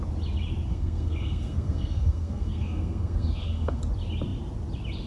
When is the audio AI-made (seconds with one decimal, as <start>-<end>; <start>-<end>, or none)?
0.7-3.8